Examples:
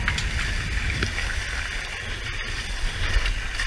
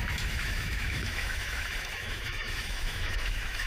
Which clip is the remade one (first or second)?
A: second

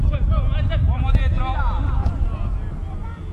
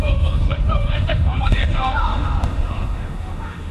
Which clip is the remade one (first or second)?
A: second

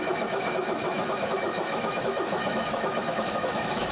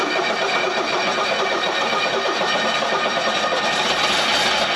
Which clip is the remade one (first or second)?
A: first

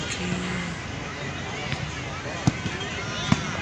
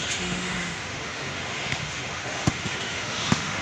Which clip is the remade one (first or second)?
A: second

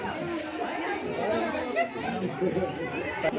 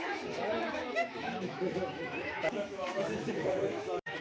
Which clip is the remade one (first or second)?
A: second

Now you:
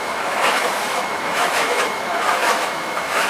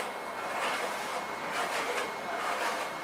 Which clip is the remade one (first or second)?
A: first